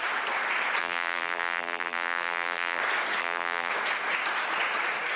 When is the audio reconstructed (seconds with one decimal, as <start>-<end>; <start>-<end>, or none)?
0.8-2.8; 3.2-3.7